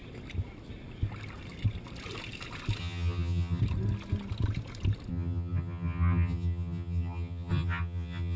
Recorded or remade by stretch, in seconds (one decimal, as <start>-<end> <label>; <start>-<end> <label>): 0.0-2.8 recorded; 2.8-3.6 remade; 3.6-5.1 recorded; 5.1-8.4 remade